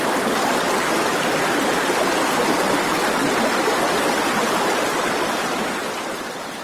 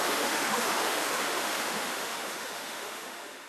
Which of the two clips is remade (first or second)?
second